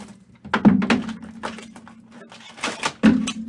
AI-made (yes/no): no